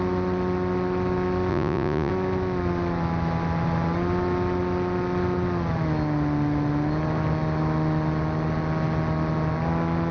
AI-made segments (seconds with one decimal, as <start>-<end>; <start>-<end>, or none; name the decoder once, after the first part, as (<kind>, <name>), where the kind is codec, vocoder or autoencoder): 1.5-2.1 (vocoder, Vocos)

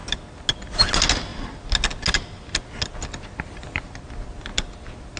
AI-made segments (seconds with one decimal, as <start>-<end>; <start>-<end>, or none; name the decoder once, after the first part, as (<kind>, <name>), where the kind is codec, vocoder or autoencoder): none

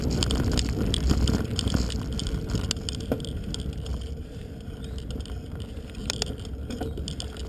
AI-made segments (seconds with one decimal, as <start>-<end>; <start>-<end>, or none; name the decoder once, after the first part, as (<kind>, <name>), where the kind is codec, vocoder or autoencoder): 3.9-4.5 (vocoder, BigVGAN v2); 6.0-7.0

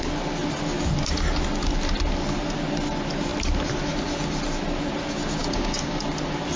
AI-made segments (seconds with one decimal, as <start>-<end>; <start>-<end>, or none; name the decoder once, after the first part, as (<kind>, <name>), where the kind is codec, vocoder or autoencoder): 5.4-6.0 (codec, DAC)